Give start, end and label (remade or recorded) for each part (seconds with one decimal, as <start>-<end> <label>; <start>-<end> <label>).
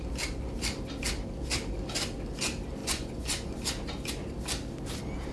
0.0-2.8 recorded; 2.8-3.5 remade; 3.5-5.3 recorded